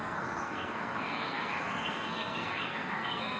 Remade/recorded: remade